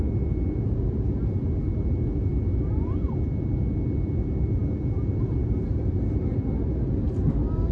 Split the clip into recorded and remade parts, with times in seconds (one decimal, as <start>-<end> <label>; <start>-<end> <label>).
0.0-7.7 recorded